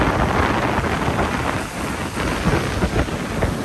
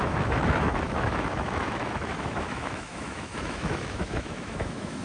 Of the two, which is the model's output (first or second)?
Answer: second